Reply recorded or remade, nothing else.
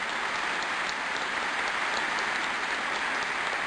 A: recorded